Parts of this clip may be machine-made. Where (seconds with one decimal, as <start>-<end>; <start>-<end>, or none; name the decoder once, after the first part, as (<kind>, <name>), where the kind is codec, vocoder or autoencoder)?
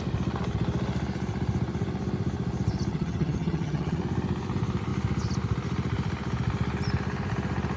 2.9-4.0 (vocoder, HiFi-GAN)